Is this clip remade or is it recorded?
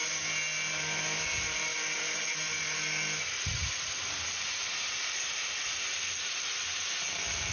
recorded